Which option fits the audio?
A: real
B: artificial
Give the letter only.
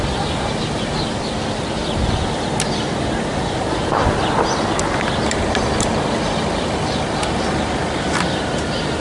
A